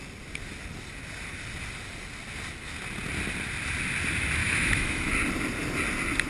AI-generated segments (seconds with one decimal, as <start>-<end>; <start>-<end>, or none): 4.4-5.1